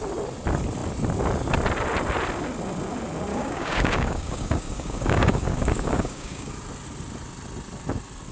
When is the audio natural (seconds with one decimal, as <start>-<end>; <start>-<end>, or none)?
0.0-3.3; 6.5-8.3